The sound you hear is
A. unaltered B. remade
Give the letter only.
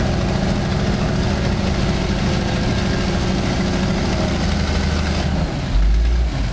A